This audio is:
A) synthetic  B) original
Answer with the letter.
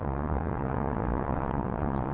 A